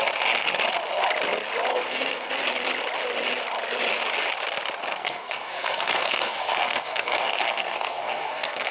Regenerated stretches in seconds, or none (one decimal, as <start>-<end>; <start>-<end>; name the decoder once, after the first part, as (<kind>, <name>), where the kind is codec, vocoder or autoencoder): 1.7-2.3 (codec, SNAC); 4.9-8.7